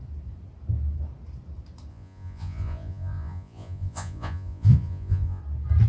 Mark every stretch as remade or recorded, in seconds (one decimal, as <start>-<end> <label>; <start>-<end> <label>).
0.0-1.9 recorded; 1.9-5.4 remade; 5.4-5.9 recorded